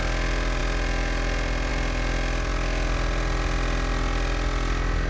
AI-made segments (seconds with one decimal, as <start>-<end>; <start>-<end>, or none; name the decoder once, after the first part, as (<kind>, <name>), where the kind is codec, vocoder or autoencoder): none